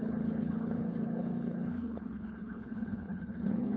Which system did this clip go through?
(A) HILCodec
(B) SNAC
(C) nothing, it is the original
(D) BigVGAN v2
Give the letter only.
A